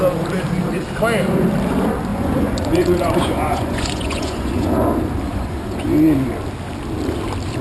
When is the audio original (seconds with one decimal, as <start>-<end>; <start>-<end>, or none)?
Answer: 0.0-2.1; 4.7-5.3; 5.8-7.6